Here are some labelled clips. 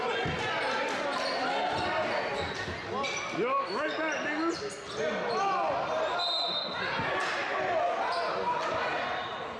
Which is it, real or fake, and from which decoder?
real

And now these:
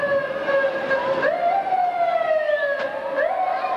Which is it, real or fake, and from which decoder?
real